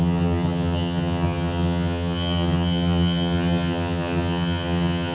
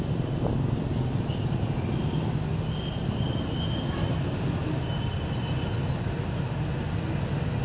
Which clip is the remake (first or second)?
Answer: first